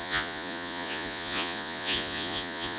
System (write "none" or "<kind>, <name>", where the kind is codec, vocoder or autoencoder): vocoder, Vocos